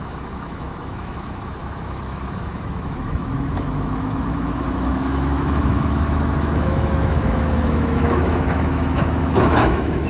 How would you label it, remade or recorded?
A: remade